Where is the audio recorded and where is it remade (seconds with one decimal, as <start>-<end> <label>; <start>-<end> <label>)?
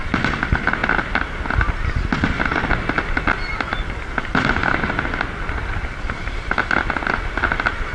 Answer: 0.0-7.9 recorded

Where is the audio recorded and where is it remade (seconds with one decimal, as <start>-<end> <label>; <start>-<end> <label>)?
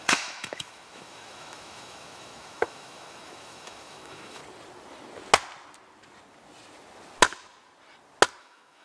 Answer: 0.0-4.4 remade; 4.4-8.4 recorded; 8.4-8.8 remade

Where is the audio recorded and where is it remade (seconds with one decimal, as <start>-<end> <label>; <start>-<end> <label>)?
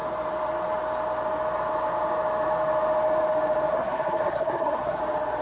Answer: 0.0-3.7 recorded; 3.7-5.0 remade; 5.0-5.4 recorded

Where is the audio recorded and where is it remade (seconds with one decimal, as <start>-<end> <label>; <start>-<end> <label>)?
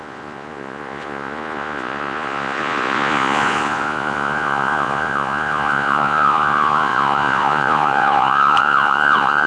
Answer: 0.0-9.5 remade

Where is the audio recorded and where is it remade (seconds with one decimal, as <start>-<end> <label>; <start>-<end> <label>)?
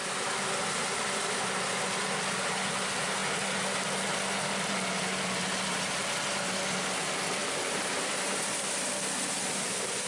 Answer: 0.0-7.4 recorded; 7.4-8.1 remade; 8.1-10.1 recorded